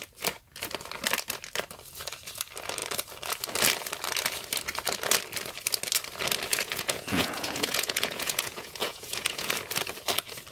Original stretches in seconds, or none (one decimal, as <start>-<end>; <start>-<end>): 0.0-6.5; 9.5-10.5